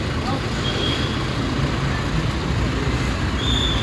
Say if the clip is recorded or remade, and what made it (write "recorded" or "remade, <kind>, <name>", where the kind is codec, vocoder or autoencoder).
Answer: recorded